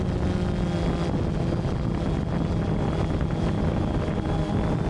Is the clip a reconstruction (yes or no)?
no